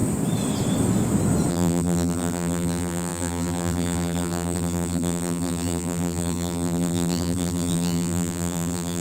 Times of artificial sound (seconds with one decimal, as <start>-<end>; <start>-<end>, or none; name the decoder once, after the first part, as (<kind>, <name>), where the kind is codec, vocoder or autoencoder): 1.5-9.0 (vocoder, BigVGAN v2)